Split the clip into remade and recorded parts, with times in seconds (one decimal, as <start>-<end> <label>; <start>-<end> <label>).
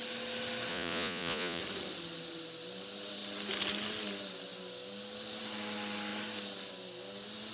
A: 0.0-0.7 recorded; 0.7-1.6 remade; 1.6-7.5 recorded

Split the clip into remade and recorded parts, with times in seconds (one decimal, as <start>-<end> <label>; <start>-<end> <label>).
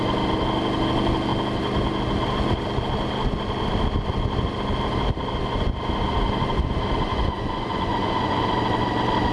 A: 0.0-7.1 recorded; 7.1-8.4 remade; 8.4-9.3 recorded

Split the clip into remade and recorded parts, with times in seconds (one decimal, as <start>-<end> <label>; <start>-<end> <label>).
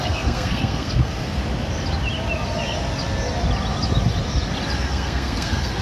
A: 0.0-1.4 remade; 1.4-4.9 recorded; 4.9-5.8 remade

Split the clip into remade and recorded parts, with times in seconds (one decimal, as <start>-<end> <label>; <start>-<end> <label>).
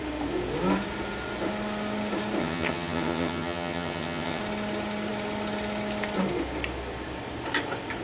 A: 0.0-2.4 recorded; 2.4-4.4 remade; 4.4-8.0 recorded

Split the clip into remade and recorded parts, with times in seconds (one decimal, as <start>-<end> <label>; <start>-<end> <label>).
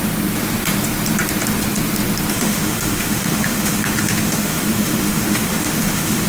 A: 0.0-2.3 recorded; 2.3-6.3 remade